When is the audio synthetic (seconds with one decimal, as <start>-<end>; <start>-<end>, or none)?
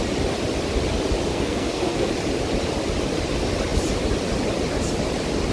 1.3-2.1